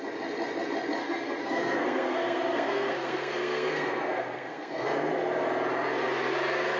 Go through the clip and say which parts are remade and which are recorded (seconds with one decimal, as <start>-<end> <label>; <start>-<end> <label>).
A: 0.0-1.0 recorded; 1.0-5.1 remade; 5.1-6.8 recorded